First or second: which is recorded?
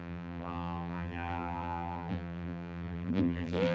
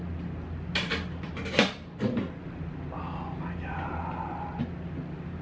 second